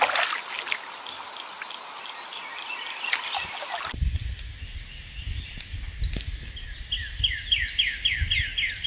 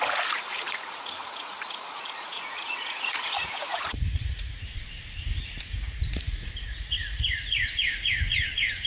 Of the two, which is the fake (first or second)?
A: second